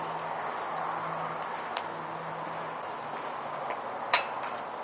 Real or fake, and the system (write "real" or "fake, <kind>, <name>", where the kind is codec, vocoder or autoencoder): real